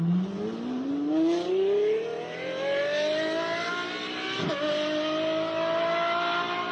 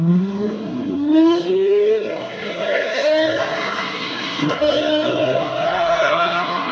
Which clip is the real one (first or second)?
first